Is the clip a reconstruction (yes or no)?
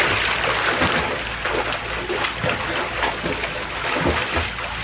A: no